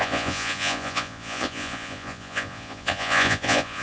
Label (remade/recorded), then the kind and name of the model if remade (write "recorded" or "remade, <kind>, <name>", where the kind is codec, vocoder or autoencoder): remade, vocoder, Vocos